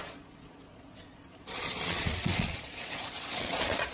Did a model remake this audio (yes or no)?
yes